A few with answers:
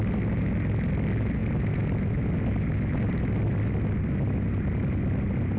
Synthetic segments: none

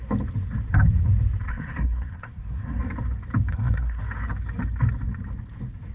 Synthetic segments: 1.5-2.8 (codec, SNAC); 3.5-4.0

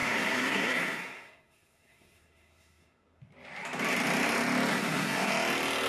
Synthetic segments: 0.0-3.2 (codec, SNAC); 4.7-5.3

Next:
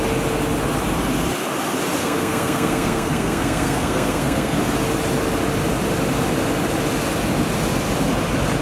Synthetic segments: 2.0-4.6 (codec, SNAC)

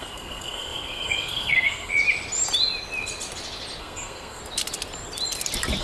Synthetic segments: 0.0-1.9 (codec, SNAC); 3.8-4.4